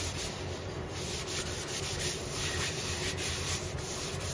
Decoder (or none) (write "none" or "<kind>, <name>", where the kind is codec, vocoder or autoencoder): vocoder, BigVGAN v2